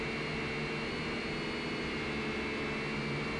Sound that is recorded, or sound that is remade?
recorded